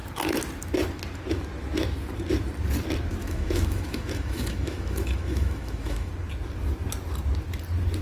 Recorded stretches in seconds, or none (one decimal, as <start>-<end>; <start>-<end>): 0.0-3.2; 6.1-8.0